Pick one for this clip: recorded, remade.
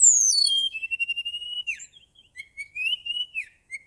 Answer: remade